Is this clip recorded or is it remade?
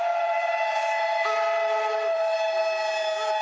recorded